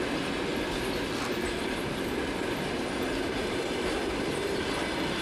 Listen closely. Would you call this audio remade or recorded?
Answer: recorded